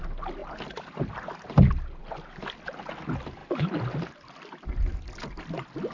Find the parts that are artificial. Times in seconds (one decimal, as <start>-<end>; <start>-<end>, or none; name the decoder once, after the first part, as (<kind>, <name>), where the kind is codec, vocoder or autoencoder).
none

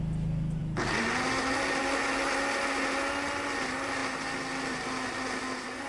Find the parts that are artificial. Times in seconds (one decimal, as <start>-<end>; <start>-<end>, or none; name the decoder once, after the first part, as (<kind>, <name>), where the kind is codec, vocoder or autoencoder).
none

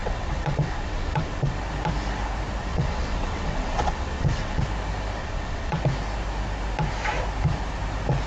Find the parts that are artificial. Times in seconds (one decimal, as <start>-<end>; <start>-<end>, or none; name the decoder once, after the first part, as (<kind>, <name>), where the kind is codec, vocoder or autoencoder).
0.0-1.6 (vocoder, WaveNeXt); 2.7-4.6; 5.2-5.8